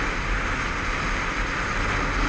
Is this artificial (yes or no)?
no